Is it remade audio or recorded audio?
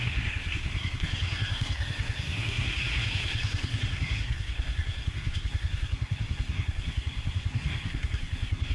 remade